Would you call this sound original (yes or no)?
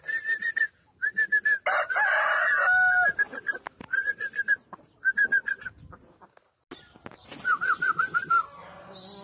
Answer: yes